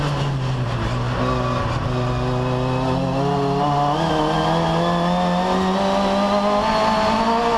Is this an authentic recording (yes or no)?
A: yes